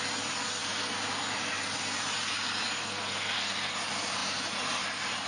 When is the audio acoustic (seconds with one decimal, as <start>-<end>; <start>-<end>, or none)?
0.0-2.8; 3.7-5.3